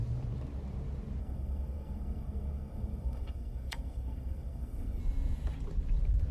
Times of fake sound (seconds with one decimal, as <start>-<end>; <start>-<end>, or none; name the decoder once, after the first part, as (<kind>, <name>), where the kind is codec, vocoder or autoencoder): 1.2-5.0 (codec, SNAC)